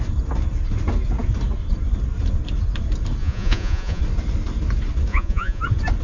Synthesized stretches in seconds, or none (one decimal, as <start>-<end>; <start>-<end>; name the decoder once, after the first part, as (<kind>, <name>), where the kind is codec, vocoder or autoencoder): 3.2-4.0 (vocoder, Vocos); 5.1-5.6